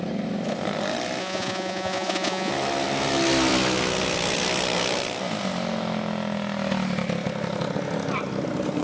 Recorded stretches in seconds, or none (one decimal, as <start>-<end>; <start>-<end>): 0.0-1.2; 2.5-8.8